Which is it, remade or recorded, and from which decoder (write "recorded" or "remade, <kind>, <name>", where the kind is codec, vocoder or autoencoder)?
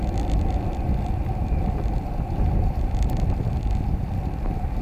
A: recorded